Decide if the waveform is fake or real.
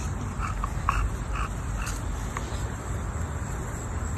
real